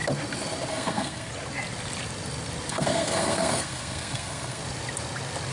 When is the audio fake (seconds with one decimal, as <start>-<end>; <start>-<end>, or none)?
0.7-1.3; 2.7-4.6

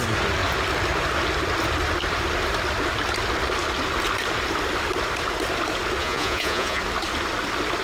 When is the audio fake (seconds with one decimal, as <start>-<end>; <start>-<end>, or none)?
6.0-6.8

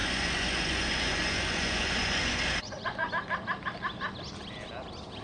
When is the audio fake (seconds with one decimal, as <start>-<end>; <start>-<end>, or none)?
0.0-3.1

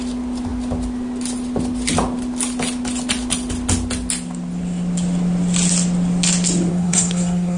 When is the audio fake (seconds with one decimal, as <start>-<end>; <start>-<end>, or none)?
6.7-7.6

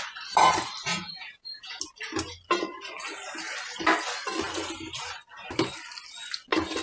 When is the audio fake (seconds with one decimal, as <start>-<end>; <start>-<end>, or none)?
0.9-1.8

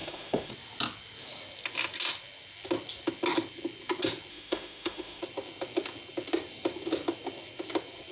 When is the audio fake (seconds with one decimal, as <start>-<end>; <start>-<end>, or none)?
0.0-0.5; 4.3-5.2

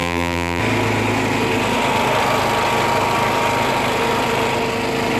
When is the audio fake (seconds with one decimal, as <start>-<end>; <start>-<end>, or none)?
0.0-0.6